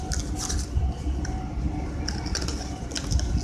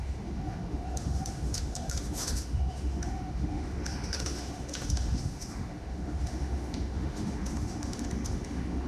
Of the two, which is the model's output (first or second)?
second